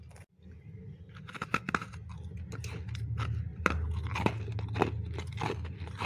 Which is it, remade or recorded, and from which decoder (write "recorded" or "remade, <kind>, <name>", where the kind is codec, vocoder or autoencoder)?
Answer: recorded